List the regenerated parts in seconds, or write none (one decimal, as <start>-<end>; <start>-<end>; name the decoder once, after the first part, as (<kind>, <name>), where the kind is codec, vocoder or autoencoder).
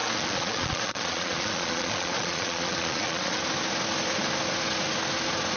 0.0-3.4 (vocoder, Vocos)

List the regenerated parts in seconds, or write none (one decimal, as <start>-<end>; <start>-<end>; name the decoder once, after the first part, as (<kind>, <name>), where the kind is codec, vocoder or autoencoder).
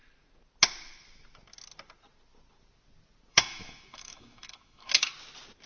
3.3-5.1 (autoencoder, DAC-VAE)